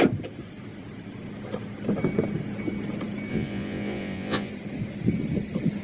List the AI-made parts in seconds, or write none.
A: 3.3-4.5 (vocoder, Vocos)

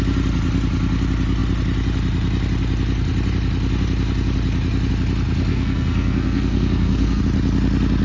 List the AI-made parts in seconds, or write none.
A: 5.5-7.2 (codec, SNAC)

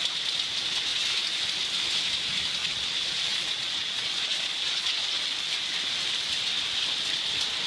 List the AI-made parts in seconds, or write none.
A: 2.6-5.2 (vocoder, Vocos)

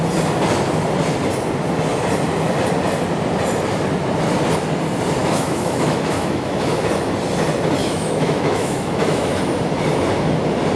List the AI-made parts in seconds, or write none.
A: 5.2-6.9 (autoencoder, DAC-VAE); 7.8-9.4

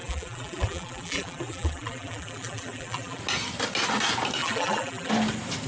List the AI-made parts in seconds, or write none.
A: 0.0-3.2 (vocoder, BigVGAN v2); 4.4-5.1

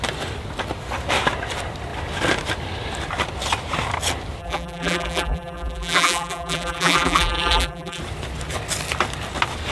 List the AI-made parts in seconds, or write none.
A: 4.4-8.0 (vocoder, BigVGAN v2)